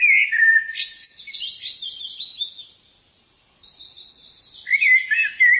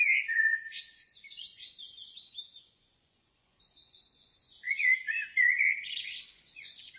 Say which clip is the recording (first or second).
first